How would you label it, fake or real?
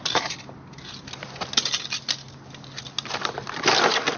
real